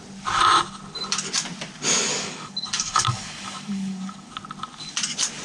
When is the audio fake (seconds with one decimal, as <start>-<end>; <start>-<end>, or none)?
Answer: 2.1-4.3